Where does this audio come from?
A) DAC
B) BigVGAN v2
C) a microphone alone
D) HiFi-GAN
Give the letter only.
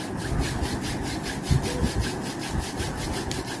C